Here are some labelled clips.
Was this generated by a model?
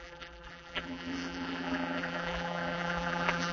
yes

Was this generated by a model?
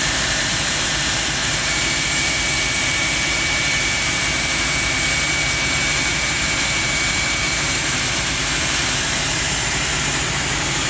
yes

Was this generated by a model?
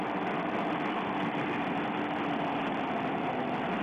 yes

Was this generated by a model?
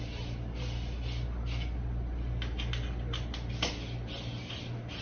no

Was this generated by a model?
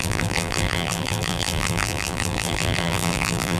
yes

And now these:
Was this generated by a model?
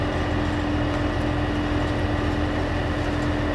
no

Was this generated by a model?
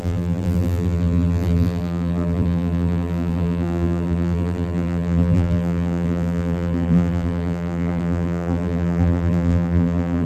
yes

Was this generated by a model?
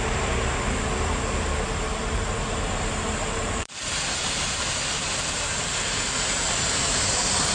yes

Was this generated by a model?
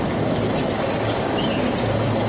yes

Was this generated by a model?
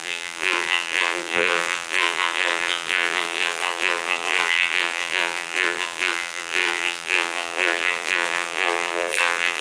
yes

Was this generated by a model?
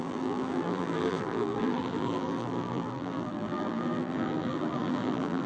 yes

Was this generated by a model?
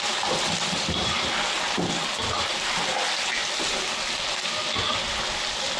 yes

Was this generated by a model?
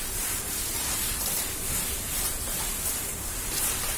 yes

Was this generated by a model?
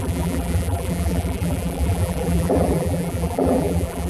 yes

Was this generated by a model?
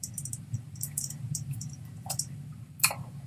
yes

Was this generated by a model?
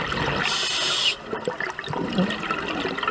no